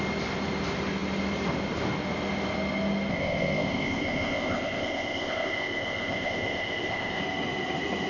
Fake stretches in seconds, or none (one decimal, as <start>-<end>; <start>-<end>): 3.1-7.2